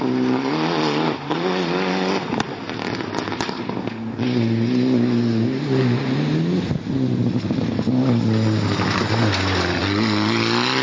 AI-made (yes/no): no